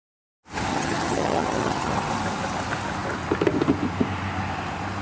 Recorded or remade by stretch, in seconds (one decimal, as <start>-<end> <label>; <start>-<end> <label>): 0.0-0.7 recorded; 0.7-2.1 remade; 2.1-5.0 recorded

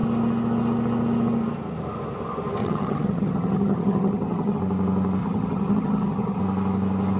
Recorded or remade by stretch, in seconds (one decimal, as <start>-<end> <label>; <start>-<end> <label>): 0.0-2.6 recorded; 2.6-4.6 remade; 4.6-5.2 recorded; 5.2-6.4 remade; 6.4-7.2 recorded

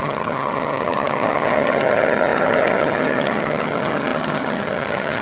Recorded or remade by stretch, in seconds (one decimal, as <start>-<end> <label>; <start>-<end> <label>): 0.0-5.2 remade